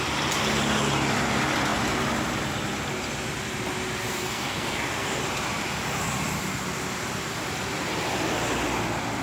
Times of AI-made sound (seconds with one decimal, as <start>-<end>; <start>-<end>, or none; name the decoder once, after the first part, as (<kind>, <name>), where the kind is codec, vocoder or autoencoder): 4.1-5.2 (codec, SNAC)